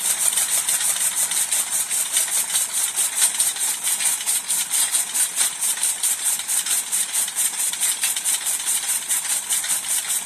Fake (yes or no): no